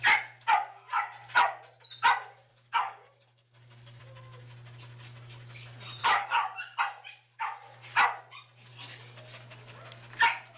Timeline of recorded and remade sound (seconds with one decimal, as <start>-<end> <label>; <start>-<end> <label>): 0.0-2.5 recorded; 2.5-4.0 remade; 4.0-6.0 recorded; 6.0-6.8 remade; 6.8-8.7 recorded; 8.7-9.7 remade; 9.7-10.6 recorded